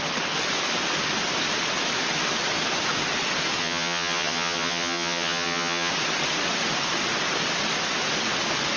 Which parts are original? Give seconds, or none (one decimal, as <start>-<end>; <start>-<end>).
0.0-3.6; 5.9-8.8